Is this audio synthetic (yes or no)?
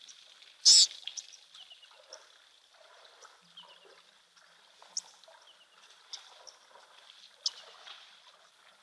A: no